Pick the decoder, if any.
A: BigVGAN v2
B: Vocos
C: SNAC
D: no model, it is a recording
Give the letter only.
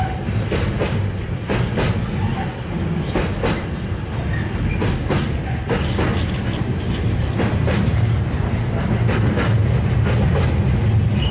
D